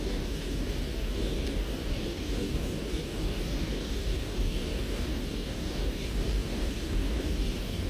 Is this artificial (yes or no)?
yes